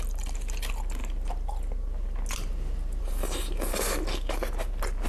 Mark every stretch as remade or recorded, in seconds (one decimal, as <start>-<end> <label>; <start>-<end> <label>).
0.0-5.1 recorded